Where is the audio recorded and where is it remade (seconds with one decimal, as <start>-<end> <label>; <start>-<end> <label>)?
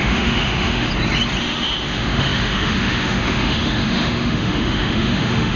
0.0-0.9 remade; 0.9-1.4 recorded; 1.4-5.6 remade